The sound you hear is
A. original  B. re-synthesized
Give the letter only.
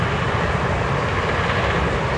A